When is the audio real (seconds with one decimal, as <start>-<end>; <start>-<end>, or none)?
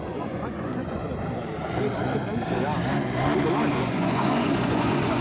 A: 1.0-3.7